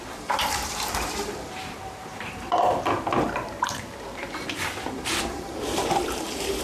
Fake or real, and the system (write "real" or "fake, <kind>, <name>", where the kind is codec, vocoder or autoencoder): fake, vocoder, BigVGAN v2